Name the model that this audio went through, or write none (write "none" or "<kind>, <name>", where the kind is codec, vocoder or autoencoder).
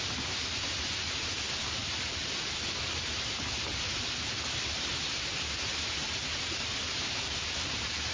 vocoder, BigVGAN v2